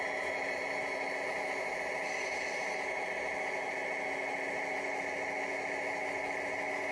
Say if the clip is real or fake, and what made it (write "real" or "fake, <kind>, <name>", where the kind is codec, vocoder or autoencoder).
real